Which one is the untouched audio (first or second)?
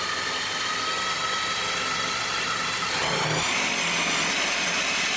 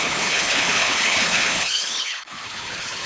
first